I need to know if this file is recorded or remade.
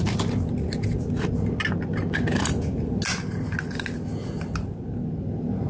recorded